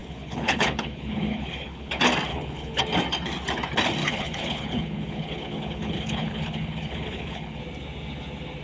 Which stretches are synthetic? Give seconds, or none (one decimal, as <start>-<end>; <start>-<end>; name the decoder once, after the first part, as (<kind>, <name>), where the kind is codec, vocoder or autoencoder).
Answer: 0.0-1.9 (codec, HILCodec); 2.3-2.8; 4.0-7.6